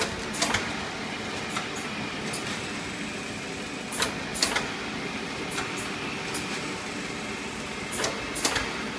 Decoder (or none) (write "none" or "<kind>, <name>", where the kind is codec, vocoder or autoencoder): none